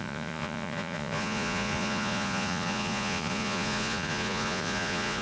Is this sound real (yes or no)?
no